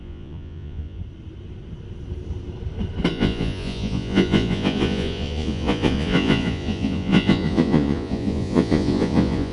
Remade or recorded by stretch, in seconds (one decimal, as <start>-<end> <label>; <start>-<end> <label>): 0.0-1.0 remade; 1.0-3.1 recorded; 3.1-9.5 remade